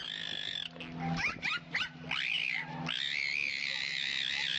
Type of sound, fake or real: real